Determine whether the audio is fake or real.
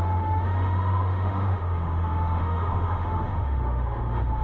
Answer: fake